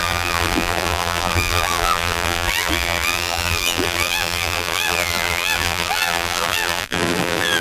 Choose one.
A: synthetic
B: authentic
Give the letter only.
A